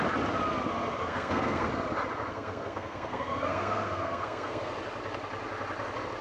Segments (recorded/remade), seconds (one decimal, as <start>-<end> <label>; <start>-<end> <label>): 0.0-1.0 recorded; 1.0-1.7 remade; 1.7-2.3 recorded; 2.3-4.7 remade; 4.7-6.2 recorded